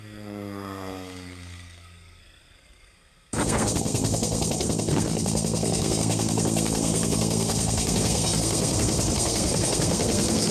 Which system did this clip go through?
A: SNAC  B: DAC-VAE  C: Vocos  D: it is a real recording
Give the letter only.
A